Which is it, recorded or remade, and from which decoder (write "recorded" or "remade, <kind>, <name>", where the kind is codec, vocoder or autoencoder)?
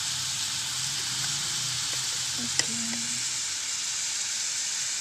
recorded